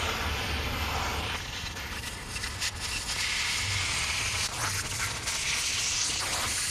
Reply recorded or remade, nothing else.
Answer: recorded